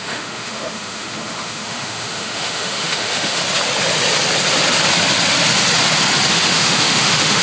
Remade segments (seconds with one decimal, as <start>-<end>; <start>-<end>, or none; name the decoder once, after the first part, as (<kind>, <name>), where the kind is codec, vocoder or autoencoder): 0.0-3.4 (autoencoder, DAC-VAE); 6.3-7.4